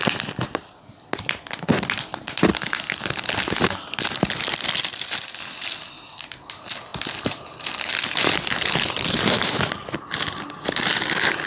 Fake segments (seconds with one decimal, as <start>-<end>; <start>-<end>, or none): none